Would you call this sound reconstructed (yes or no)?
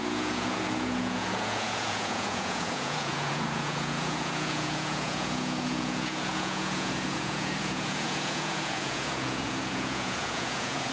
yes